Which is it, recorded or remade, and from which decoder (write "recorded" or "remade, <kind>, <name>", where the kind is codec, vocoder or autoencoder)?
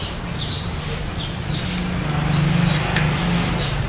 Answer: recorded